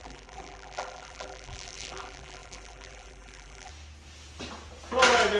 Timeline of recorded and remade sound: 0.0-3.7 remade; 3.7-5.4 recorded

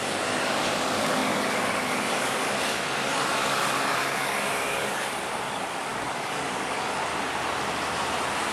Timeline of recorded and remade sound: 0.0-7.1 remade; 7.1-8.5 recorded

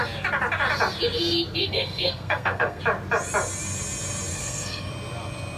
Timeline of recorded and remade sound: 0.0-1.6 recorded; 1.6-2.8 remade; 2.8-4.3 recorded; 4.3-4.9 remade; 4.9-5.6 recorded

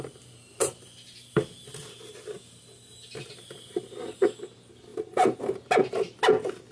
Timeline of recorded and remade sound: 0.0-4.9 recorded; 4.9-5.4 remade; 5.4-6.7 recorded

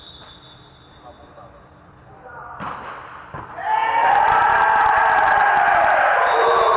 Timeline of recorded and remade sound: 0.0-6.8 recorded

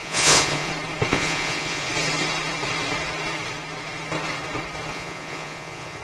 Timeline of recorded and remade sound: 0.0-0.7 remade; 0.7-1.1 recorded; 1.1-1.9 remade; 1.9-4.9 recorded; 4.9-6.0 remade